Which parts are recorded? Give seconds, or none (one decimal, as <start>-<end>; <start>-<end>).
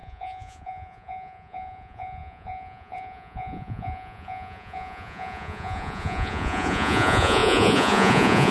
none